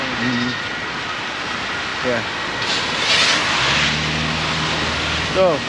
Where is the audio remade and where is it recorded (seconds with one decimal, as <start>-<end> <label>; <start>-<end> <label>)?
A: 0.0-5.7 recorded